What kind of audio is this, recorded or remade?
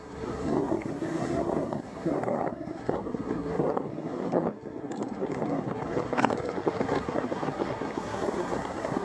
remade